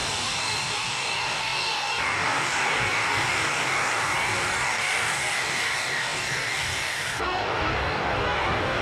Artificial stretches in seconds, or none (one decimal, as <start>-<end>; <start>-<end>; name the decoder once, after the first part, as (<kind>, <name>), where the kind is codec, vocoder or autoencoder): 0.0-8.8 (codec, DAC)